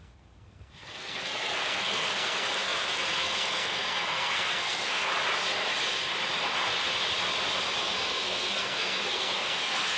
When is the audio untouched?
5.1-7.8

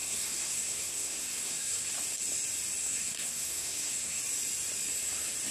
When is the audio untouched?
1.9-2.8; 4.2-5.5

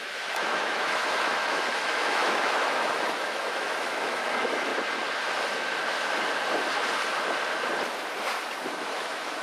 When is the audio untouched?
4.7-8.8

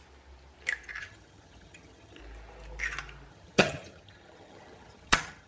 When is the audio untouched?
0.0-1.0; 2.2-3.3